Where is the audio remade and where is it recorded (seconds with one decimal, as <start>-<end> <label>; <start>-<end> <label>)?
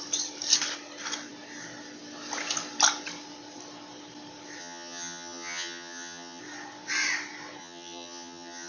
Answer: 0.0-4.6 recorded; 4.6-6.4 remade; 6.4-7.6 recorded; 7.6-8.7 remade